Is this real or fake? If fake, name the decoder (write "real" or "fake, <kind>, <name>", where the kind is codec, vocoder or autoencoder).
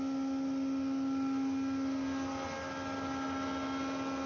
real